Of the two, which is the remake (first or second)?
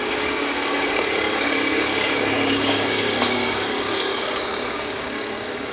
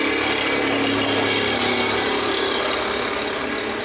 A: first